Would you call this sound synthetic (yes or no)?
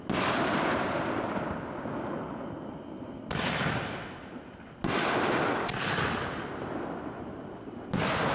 no